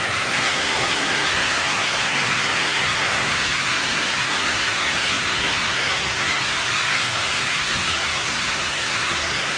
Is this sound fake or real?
fake